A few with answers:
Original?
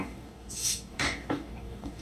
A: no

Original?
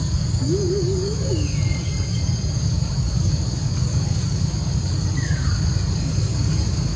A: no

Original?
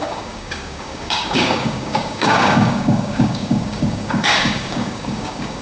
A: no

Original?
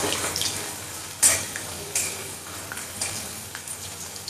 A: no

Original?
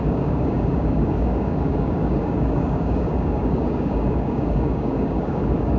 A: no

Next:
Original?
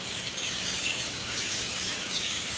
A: no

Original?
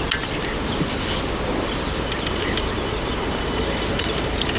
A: yes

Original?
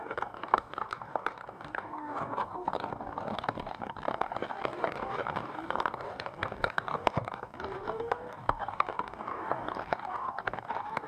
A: no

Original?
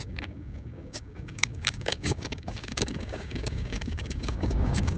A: no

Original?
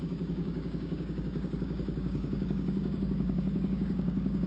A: no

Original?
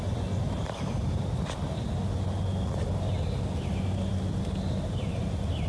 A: yes